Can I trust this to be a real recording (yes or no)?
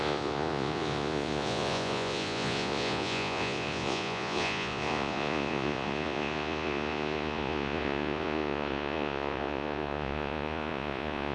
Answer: no